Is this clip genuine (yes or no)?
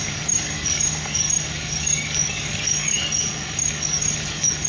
no